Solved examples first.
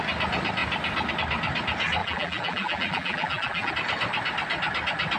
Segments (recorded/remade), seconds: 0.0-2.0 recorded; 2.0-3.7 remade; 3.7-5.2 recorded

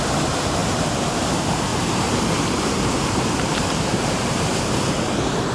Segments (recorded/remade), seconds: 0.0-1.7 recorded; 1.7-4.6 remade; 4.6-5.5 recorded